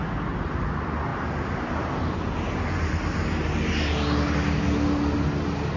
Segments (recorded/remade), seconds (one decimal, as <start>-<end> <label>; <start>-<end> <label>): 0.0-5.8 recorded